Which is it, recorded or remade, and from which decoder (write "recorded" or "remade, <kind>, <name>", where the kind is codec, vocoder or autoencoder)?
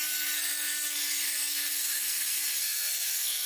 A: remade, codec, SNAC